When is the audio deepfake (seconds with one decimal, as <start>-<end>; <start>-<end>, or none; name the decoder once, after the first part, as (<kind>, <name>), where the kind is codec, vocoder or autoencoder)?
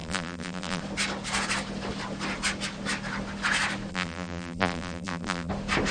0.0-0.8 (vocoder, BigVGAN v2); 3.9-5.5